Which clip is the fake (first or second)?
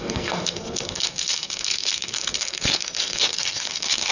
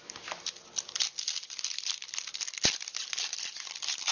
first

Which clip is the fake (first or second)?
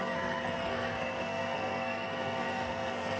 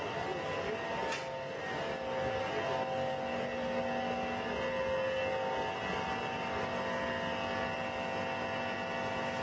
first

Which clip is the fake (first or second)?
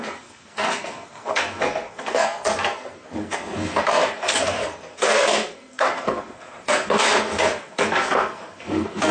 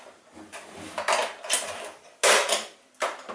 first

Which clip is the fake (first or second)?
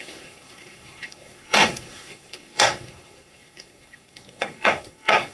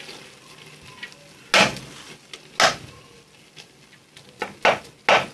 first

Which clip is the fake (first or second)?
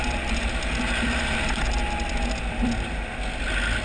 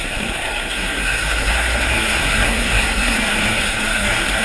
second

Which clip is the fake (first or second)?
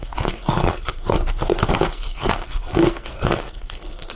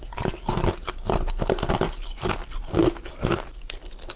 first